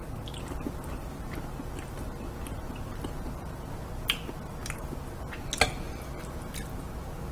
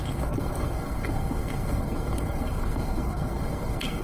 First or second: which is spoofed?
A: second